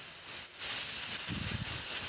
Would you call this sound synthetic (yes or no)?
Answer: no